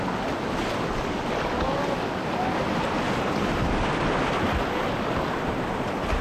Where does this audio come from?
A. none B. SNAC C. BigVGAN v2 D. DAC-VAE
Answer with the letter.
A